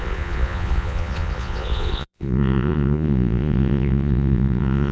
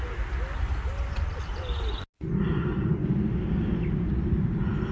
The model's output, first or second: first